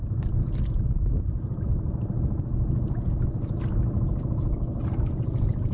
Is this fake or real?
real